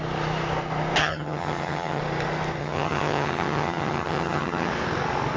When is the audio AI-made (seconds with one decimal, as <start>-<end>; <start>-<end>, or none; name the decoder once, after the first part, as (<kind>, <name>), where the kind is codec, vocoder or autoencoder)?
1.0-2.0 (vocoder, HiFi-GAN); 2.6-4.7